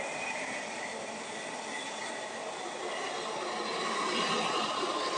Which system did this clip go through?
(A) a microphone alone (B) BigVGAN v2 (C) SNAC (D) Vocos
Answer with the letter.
A